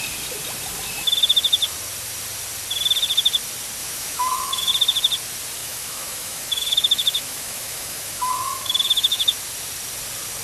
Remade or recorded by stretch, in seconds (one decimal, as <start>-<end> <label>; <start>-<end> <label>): 0.0-3.8 recorded; 3.8-4.7 remade; 4.7-5.6 recorded; 5.6-9.4 remade; 9.4-10.4 recorded